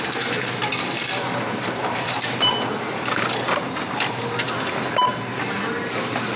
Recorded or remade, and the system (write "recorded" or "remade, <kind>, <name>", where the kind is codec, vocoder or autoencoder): recorded